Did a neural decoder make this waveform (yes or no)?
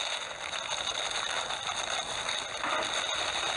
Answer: no